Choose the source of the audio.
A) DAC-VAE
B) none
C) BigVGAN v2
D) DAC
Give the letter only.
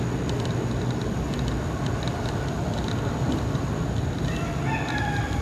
B